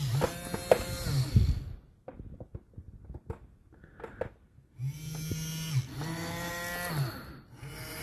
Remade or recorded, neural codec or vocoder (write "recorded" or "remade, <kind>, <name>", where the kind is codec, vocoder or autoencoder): recorded